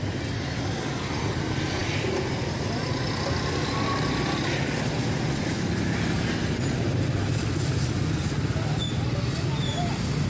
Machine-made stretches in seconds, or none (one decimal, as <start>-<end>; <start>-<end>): none

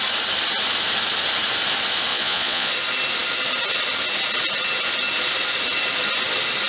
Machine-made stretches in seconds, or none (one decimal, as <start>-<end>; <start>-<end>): 2.1-2.7